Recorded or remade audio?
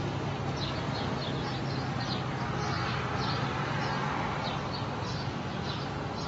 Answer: recorded